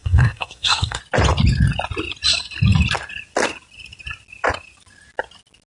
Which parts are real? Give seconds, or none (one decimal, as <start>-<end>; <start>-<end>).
1.0-5.7